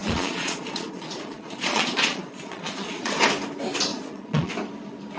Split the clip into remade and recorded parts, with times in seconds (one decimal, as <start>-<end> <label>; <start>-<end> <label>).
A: 0.0-3.1 remade; 3.1-3.9 recorded; 3.9-4.5 remade; 4.5-5.2 recorded